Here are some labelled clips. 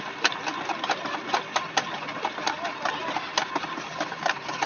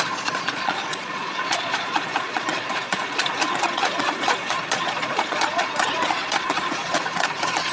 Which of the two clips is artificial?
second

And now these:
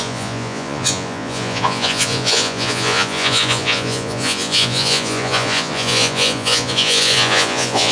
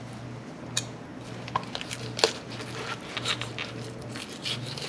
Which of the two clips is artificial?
first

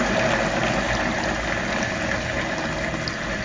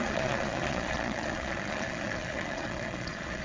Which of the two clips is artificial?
second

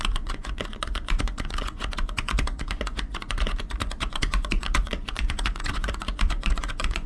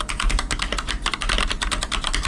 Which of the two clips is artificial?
first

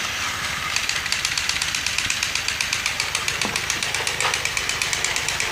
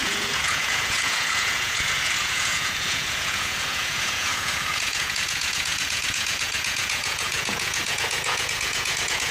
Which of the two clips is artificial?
second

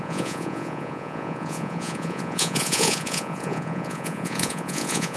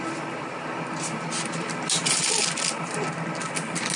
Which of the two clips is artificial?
first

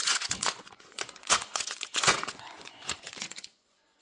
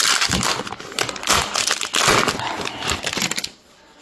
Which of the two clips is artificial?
first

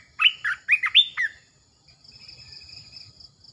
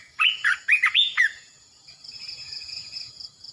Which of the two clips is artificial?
second